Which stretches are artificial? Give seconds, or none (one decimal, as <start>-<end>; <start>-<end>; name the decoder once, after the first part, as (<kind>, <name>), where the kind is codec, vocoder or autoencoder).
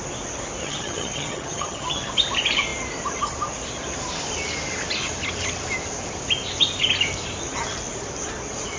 0.6-2.1 (vocoder, HiFi-GAN)